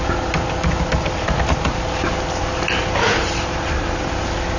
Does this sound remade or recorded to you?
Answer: recorded